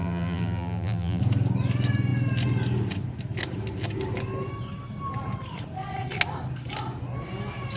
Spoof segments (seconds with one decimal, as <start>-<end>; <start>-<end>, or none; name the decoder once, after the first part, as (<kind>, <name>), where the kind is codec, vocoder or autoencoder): 0.0-1.2 (vocoder, BigVGAN v2)